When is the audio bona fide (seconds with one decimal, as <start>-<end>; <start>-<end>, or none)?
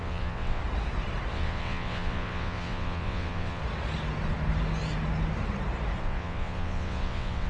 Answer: 0.6-1.3; 3.6-6.0